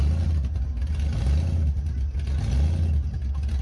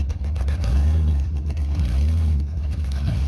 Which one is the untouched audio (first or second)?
first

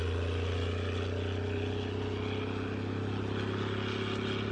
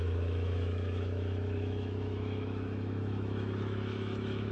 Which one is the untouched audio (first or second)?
first